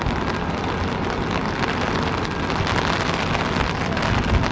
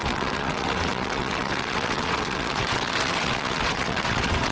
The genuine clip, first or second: first